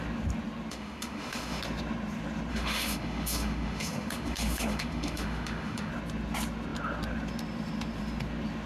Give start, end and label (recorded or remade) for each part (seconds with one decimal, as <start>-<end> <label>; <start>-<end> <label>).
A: 0.0-0.7 recorded; 0.7-1.6 remade; 1.6-2.5 recorded; 2.5-5.9 remade; 5.9-8.7 recorded